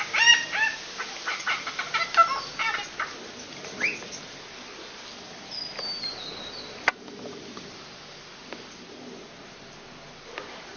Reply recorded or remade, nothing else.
recorded